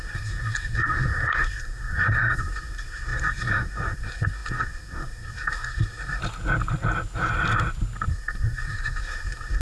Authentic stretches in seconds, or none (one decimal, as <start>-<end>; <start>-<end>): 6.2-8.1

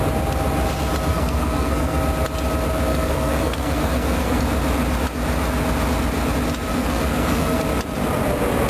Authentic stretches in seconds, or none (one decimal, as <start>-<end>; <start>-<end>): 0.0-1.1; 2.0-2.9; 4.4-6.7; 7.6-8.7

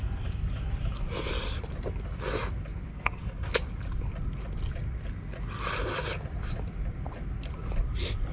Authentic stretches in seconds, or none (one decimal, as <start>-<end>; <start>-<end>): 0.0-2.9; 3.5-8.3

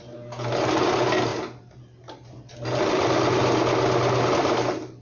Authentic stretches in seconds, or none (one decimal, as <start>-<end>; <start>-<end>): 0.0-5.0